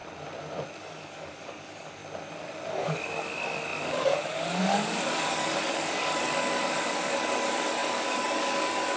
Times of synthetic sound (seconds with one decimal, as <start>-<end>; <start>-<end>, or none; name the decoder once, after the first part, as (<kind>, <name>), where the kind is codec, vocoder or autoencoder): 0.8-2.0 (codec, DAC); 2.7-9.0